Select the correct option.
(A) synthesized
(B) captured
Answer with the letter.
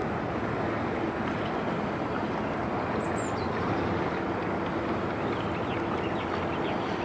B